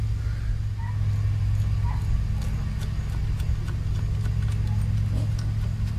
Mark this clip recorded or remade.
recorded